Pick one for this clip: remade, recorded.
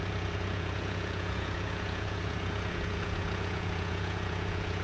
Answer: remade